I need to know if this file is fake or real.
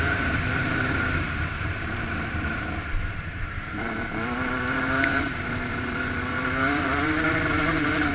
fake